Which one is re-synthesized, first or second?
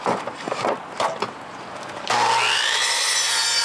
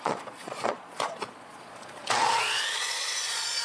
second